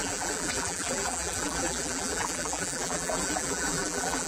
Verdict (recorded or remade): remade